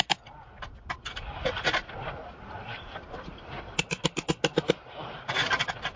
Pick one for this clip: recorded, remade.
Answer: recorded